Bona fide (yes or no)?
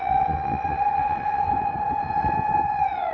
no